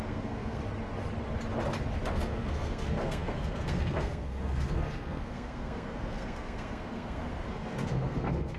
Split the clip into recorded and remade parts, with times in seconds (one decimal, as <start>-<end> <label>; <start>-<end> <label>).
0.0-0.6 remade; 0.6-2.1 recorded; 2.1-8.6 remade